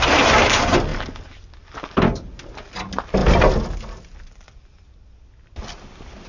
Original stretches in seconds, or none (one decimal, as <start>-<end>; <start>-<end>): 0.0-6.3

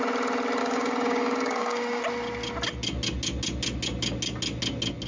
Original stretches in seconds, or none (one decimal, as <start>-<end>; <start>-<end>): 0.0-0.6; 2.0-5.1

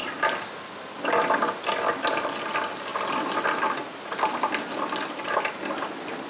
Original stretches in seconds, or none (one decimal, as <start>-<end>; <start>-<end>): 0.0-6.3

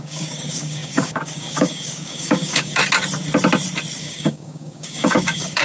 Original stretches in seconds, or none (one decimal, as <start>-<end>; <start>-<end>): 2.8-4.0

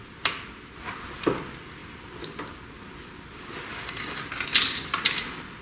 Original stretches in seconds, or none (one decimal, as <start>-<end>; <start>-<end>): 0.0-3.7; 4.2-5.6

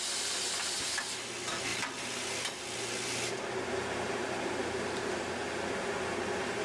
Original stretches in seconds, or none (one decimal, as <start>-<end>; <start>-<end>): 0.0-6.6